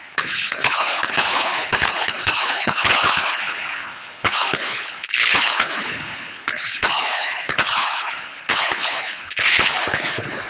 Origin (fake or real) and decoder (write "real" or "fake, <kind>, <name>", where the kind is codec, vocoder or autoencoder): fake, codec, HILCodec